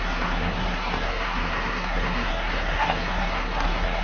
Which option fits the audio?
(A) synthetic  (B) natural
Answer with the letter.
A